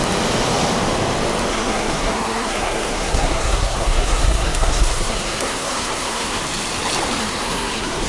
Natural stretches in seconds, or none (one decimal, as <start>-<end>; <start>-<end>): 0.0-1.5; 6.4-7.2